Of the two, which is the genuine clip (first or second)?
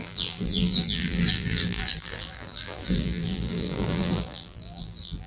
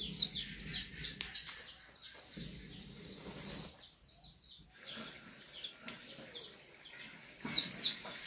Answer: second